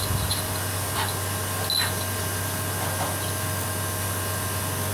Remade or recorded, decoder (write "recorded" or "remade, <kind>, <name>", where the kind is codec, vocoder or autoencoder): recorded